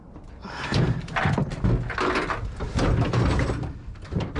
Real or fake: real